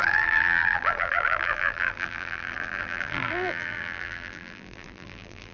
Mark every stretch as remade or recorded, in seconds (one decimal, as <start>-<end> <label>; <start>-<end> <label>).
0.0-5.5 remade